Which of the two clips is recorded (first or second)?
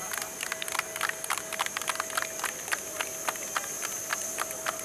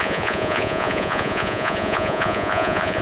first